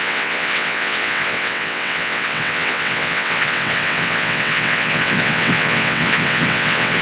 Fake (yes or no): yes